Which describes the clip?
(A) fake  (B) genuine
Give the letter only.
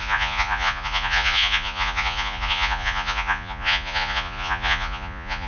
A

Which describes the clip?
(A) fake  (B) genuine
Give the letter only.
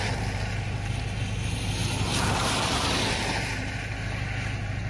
B